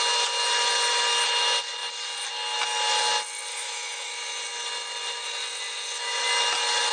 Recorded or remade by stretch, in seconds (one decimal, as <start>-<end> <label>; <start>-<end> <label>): 0.0-3.5 recorded; 3.5-4.1 remade; 4.1-6.9 recorded